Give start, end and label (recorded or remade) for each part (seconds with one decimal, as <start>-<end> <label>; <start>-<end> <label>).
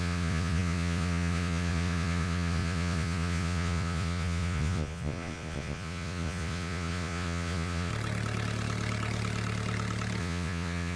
0.0-7.9 remade; 7.9-10.2 recorded; 10.2-11.0 remade